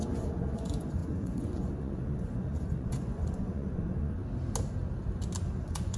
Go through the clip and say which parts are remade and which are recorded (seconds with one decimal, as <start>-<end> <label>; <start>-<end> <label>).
0.0-4.2 remade; 4.2-5.6 recorded; 5.6-6.0 remade